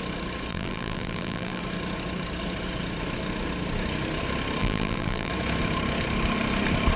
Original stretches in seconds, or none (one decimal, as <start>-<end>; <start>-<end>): 0.0-0.5; 1.6-4.6; 5.3-7.0